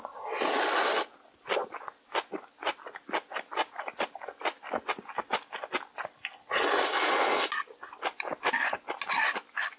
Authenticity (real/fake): real